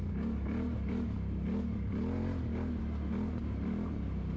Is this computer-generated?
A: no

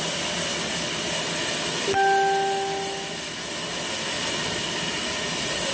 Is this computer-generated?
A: no